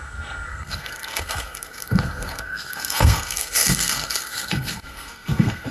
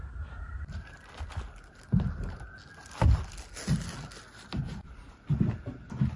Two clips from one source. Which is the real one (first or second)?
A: second